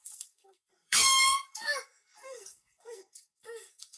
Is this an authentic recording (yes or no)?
no